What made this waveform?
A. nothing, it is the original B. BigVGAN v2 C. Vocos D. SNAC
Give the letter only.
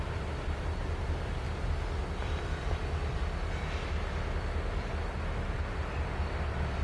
A